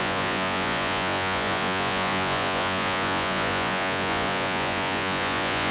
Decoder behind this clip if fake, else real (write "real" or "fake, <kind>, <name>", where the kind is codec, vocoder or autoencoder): fake, vocoder, Vocos